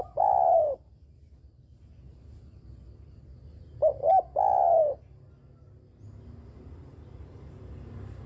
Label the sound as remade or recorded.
recorded